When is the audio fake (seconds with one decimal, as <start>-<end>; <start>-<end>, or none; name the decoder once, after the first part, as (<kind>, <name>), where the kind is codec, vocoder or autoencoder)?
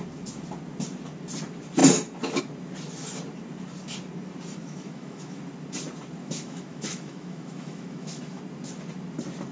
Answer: 4.6-5.4 (autoencoder, DAC-VAE); 6.2-8.4